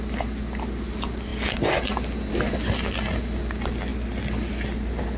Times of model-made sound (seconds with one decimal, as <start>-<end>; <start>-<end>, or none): none